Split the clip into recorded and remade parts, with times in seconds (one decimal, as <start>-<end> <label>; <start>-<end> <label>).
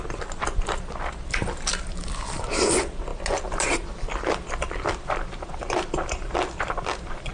0.0-7.3 recorded